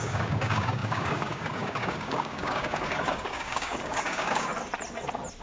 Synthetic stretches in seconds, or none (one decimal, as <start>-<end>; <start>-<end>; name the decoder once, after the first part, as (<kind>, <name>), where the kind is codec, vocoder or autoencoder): 0.0-4.5 (codec, DAC)